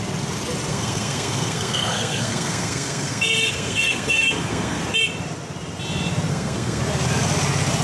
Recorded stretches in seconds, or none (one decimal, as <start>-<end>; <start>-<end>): 0.0-0.7; 4.8-6.3; 6.8-7.8